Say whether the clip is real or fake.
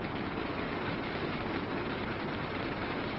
real